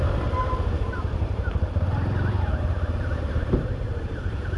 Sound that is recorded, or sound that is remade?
remade